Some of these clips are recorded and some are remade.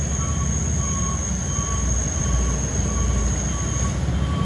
recorded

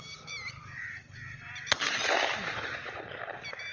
recorded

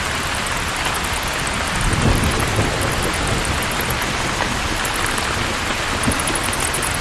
recorded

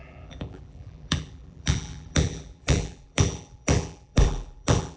remade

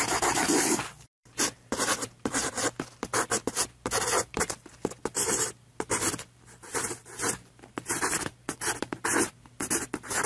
remade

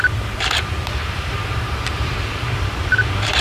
remade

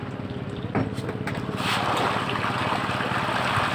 recorded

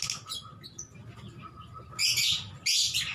recorded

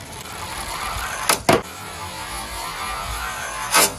recorded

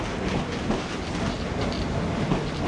recorded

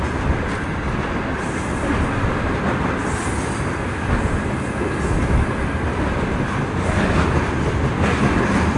recorded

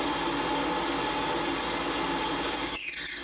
recorded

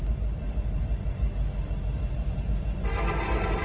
remade